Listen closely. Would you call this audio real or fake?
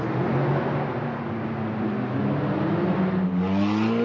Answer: real